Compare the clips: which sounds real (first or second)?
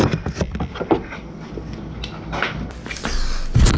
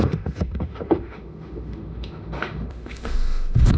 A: first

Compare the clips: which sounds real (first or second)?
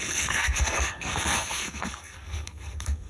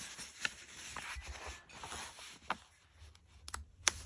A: second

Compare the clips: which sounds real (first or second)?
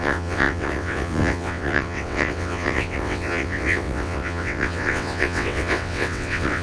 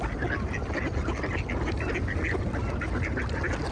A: second